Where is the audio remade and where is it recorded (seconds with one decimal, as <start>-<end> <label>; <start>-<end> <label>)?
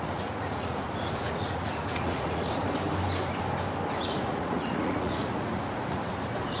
0.0-2.6 remade; 2.6-3.9 recorded; 3.9-6.6 remade